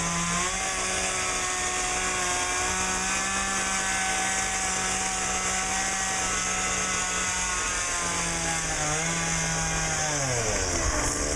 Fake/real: real